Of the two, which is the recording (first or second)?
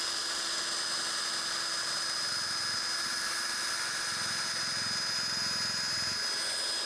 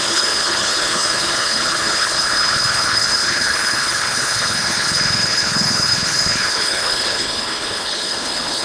first